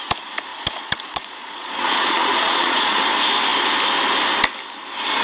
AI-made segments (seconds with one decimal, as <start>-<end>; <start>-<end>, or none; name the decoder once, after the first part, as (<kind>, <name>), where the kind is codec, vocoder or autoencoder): 0.5-3.0 (vocoder, Vocos)